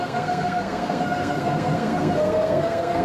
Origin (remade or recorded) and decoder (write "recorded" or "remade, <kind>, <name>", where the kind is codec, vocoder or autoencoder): remade, codec, SNAC